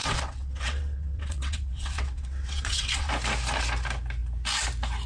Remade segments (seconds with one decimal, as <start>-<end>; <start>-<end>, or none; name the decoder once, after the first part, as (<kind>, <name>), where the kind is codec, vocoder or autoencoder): 0.0-3.1 (vocoder, WaveNeXt)